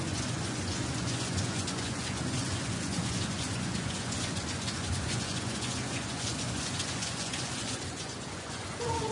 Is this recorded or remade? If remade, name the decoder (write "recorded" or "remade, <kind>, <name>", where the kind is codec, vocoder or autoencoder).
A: remade, vocoder, Vocos